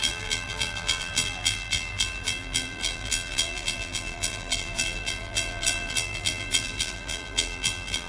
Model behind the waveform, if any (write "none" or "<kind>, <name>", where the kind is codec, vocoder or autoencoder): vocoder, BigVGAN v2